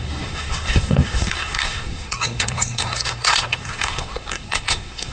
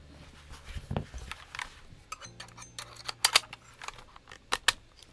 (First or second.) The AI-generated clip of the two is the first